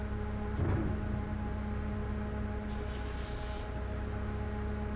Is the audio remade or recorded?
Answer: recorded